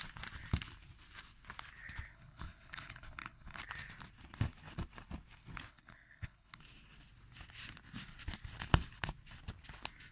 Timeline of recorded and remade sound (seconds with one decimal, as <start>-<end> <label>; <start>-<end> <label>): 0.0-2.1 recorded; 2.1-3.6 remade; 3.6-5.7 recorded; 5.7-6.6 remade; 6.6-10.1 recorded